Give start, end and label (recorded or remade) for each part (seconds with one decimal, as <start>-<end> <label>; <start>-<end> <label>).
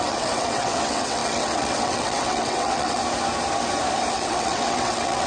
0.0-3.0 remade; 3.0-4.1 recorded; 4.1-5.3 remade